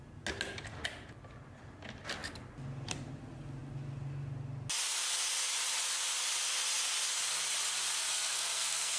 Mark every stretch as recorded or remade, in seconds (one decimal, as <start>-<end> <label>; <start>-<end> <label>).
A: 0.0-8.1 recorded; 8.1-9.0 remade

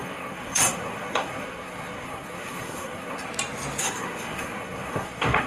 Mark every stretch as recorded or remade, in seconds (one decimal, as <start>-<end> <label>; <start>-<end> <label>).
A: 0.0-3.3 remade; 3.3-3.8 recorded; 3.8-5.5 remade

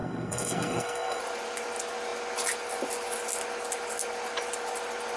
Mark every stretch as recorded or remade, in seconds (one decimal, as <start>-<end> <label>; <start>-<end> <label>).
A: 0.0-1.2 remade; 1.2-5.2 recorded

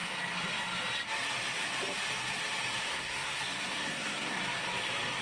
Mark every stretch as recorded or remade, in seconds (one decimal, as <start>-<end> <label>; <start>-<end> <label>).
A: 0.0-2.9 recorded; 2.9-3.4 remade; 3.4-3.8 recorded; 3.8-4.4 remade; 4.4-5.2 recorded